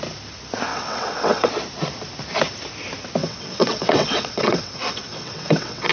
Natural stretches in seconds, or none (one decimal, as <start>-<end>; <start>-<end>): 0.0-0.7; 1.5-3.2